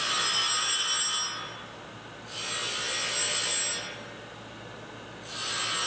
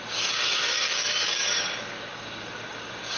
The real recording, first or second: first